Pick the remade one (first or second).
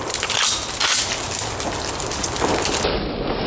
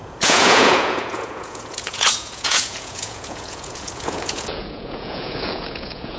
second